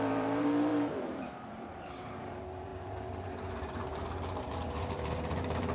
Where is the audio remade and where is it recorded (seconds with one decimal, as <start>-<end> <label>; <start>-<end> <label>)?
0.0-5.7 remade